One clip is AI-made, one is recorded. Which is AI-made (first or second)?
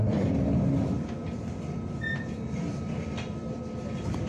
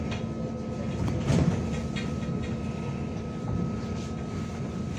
first